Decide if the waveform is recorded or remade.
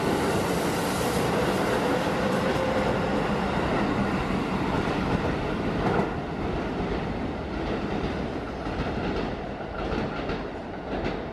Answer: recorded